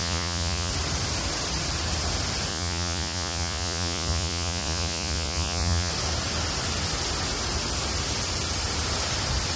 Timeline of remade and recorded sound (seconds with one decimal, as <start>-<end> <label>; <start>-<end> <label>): 0.0-0.7 remade; 0.7-2.5 recorded; 2.5-5.9 remade; 5.9-9.6 recorded